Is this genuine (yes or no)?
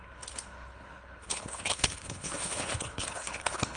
no